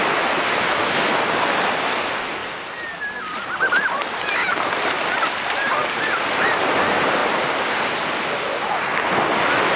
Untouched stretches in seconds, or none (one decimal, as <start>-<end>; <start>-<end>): 0.0-9.8